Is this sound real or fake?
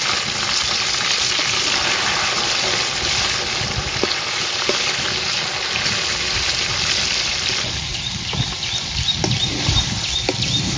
real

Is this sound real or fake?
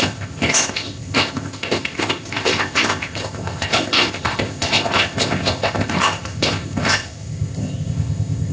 fake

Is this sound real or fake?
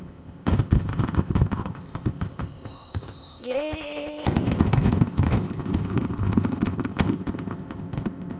fake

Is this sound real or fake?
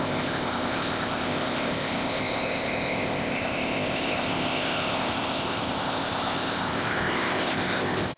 fake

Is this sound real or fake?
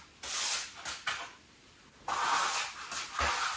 real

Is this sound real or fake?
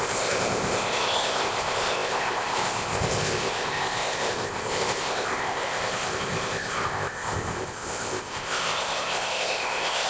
fake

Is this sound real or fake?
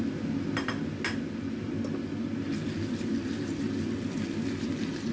real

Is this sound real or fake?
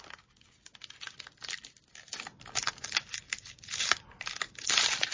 real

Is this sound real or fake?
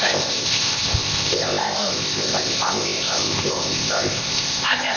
fake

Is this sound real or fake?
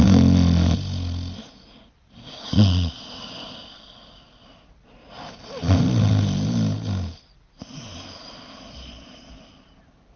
real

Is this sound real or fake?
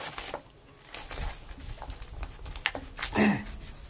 real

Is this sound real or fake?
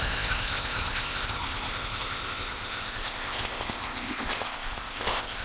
fake